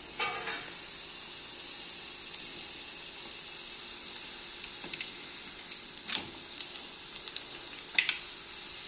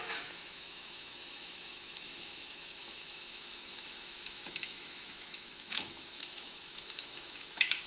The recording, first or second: first